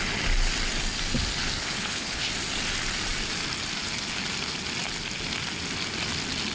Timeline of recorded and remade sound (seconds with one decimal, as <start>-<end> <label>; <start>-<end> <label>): 0.0-1.6 recorded; 1.6-2.3 remade; 2.3-6.5 recorded